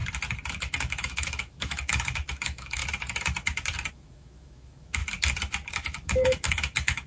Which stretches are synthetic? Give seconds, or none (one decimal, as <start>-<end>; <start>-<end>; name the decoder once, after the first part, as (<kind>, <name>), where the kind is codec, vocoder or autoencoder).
0.6-2.8 (autoencoder, DAC-VAE); 3.9-5.0; 5.7-7.1